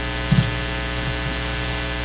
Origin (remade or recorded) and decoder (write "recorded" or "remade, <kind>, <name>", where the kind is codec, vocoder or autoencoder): recorded